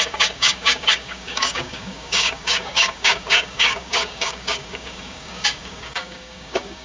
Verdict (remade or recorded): remade